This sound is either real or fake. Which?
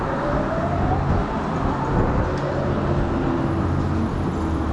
real